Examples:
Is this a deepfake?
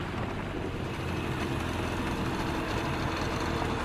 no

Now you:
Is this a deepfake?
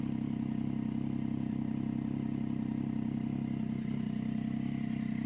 no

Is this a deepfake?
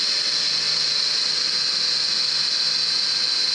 no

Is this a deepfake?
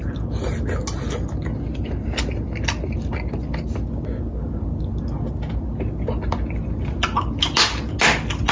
no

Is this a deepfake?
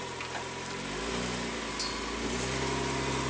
no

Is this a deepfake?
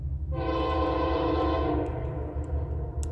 no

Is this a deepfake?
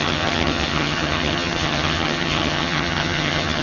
yes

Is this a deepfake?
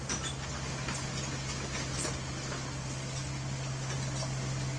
no